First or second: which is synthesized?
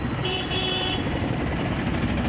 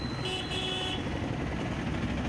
first